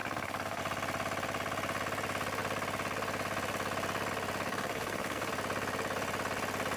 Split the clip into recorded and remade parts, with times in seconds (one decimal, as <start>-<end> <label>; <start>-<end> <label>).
0.0-0.6 remade; 0.6-4.5 recorded; 4.5-5.3 remade; 5.3-6.8 recorded